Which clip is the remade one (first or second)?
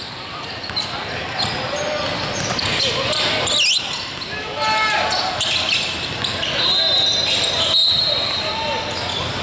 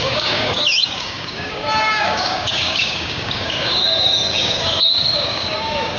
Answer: second